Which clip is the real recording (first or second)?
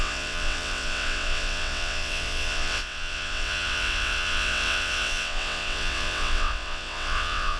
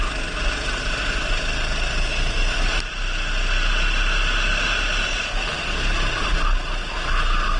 second